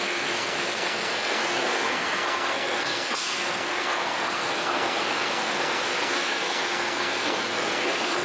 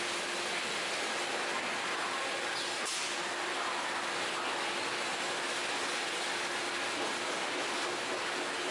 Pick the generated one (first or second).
first